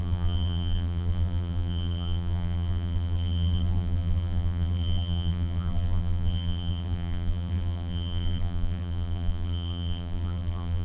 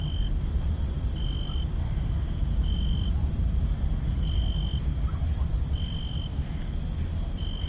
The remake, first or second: first